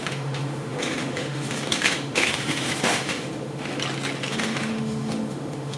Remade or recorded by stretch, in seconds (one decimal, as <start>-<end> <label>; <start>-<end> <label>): 0.0-3.7 remade; 3.7-4.3 recorded; 4.3-5.8 remade

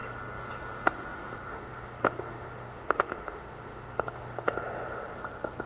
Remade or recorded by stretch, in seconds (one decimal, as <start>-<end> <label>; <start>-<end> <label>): 0.0-1.5 recorded; 1.5-4.5 remade; 4.5-5.7 recorded

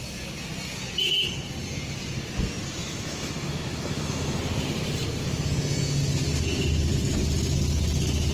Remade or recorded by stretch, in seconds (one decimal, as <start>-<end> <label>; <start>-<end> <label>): 0.0-2.8 recorded; 2.8-4.4 remade; 4.4-8.3 recorded

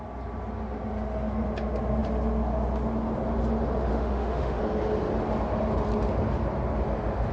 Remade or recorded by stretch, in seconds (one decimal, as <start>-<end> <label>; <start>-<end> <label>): 0.0-3.9 recorded; 3.9-4.6 remade; 4.6-7.3 recorded

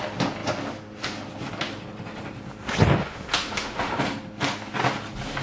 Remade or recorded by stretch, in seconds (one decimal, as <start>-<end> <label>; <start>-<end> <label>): 0.0-3.0 recorded; 3.0-4.0 remade; 4.0-5.4 recorded

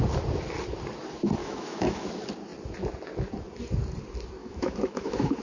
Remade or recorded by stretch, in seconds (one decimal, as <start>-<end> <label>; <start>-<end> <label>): 0.0-1.4 recorded; 1.4-2.1 remade; 2.1-4.4 recorded; 4.4-5.4 remade

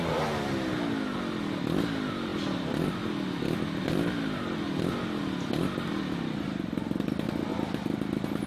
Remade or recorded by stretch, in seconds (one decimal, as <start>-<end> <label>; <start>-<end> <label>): 0.0-8.5 recorded